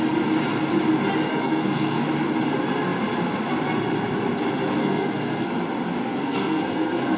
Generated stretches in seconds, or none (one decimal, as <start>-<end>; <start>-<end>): 1.3-2.0; 4.8-5.5; 6.0-7.2